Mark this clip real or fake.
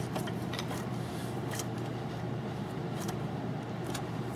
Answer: fake